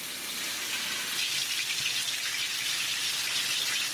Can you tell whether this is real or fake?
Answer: real